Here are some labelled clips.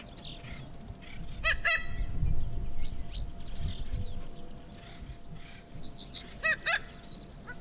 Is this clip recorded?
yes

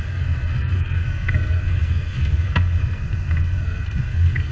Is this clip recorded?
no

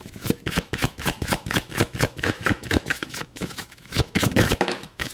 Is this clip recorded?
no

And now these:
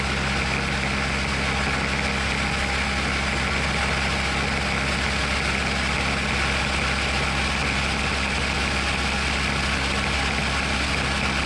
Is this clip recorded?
yes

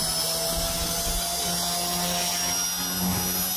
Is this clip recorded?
yes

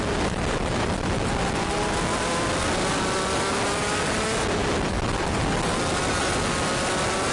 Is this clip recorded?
yes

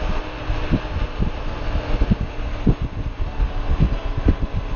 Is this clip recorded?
yes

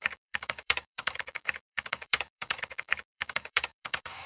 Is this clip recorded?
no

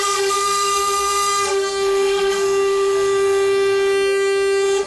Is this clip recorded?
no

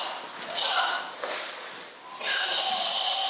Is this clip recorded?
yes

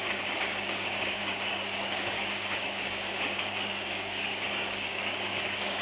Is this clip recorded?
no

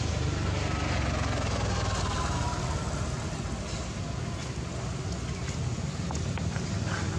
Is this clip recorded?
yes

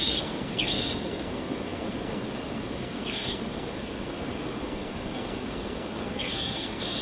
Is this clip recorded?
no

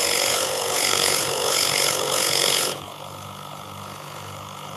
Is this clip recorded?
no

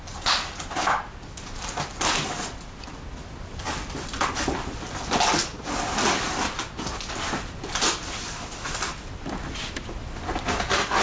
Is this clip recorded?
yes